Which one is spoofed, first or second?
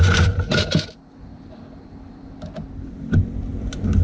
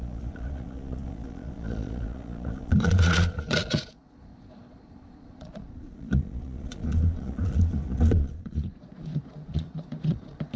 second